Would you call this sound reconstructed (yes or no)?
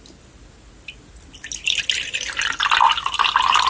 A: no